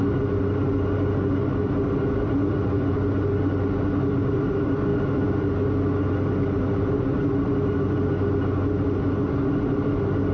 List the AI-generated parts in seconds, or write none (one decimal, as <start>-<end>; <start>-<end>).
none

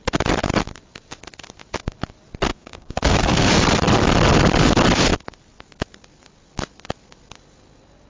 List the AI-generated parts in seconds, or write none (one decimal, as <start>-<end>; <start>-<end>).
2.5-3.5

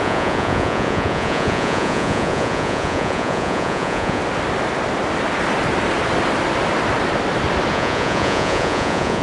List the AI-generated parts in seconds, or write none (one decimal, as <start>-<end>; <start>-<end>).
0.0-4.2; 7.7-9.2

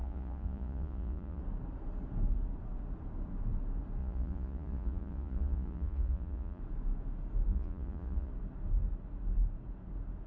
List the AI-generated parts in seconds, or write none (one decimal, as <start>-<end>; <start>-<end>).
0.0-1.4; 4.0-6.6; 7.5-8.3

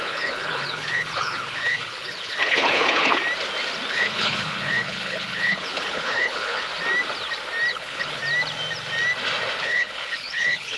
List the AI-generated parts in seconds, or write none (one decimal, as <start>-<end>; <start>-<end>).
0.0-3.2; 3.9-6.7; 7.7-8.2; 9.6-10.8

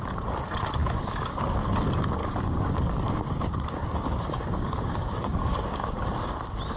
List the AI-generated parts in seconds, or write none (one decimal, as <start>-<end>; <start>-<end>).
0.8-1.4; 2.2-6.3

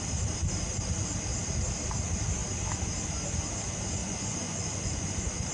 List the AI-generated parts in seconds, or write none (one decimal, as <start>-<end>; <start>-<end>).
4.0-5.1